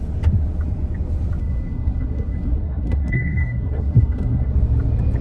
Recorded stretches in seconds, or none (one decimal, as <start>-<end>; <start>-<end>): 0.0-1.4; 4.5-5.2